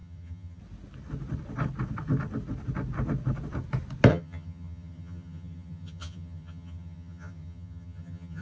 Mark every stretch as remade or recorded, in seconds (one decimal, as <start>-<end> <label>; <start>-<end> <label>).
0.0-0.6 remade; 0.6-4.1 recorded; 4.1-8.4 remade